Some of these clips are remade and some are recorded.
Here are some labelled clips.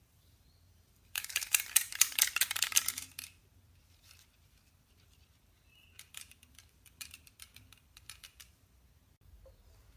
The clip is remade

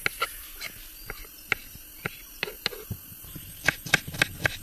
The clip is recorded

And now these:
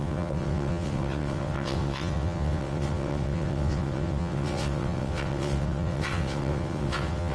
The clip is remade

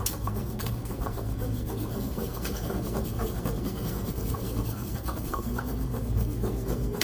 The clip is remade